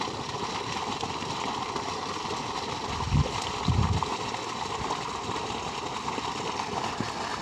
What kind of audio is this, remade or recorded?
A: recorded